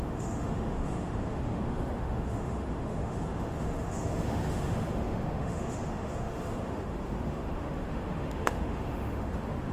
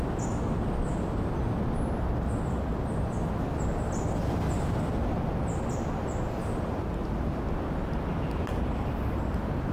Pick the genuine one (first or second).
second